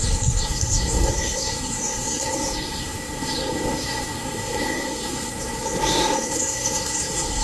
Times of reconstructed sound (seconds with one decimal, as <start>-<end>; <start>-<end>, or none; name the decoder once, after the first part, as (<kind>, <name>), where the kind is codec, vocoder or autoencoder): 0.0-7.4 (codec, SNAC)